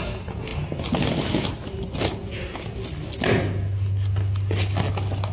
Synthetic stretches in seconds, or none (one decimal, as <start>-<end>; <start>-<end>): none

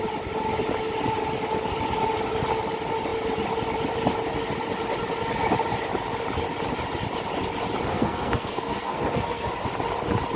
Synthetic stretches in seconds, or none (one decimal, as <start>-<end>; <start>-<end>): 7.9-9.5